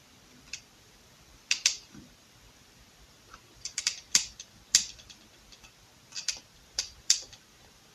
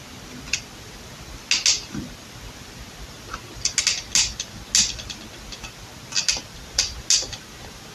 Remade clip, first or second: first